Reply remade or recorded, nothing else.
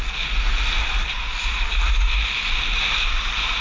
recorded